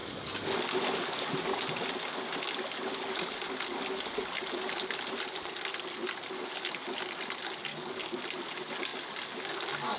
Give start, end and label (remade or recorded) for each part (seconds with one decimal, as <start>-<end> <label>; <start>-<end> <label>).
0.0-0.6 remade; 0.6-7.7 recorded; 7.7-8.2 remade; 8.2-10.0 recorded